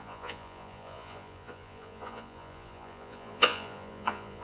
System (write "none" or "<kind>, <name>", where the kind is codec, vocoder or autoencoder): vocoder, Vocos